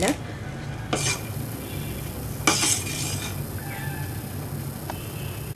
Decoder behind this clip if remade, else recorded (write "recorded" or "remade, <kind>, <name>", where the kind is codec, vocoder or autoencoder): recorded